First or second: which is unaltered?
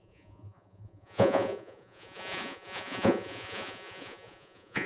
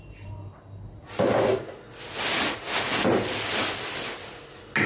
second